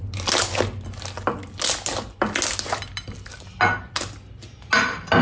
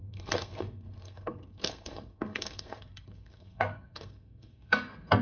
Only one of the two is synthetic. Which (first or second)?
second